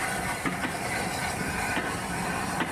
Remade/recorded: recorded